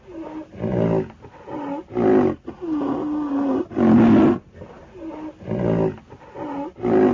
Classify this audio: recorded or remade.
recorded